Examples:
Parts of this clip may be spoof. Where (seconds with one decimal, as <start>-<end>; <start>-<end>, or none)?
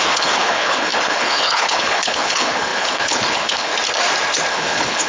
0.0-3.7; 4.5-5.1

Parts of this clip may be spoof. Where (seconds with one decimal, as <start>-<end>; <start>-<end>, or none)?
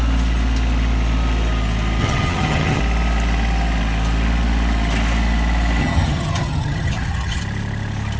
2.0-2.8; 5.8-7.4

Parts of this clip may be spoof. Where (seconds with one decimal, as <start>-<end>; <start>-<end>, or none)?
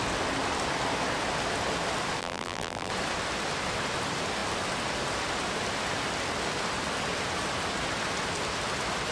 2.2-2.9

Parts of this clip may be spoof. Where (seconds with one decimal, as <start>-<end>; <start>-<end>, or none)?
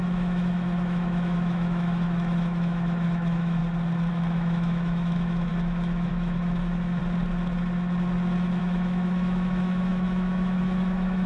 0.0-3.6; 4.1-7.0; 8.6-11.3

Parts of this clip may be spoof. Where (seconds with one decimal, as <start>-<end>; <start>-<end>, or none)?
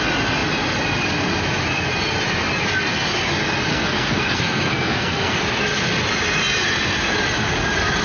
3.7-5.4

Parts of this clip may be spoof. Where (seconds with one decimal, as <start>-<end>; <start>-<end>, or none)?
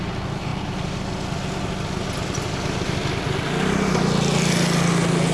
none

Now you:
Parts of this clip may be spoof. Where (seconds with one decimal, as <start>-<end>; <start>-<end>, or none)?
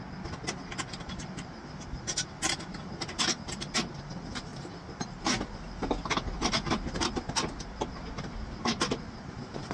none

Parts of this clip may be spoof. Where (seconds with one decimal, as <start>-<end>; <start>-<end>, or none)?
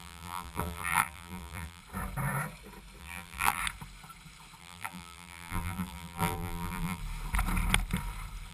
0.0-1.8; 3.0-3.6; 4.6-7.0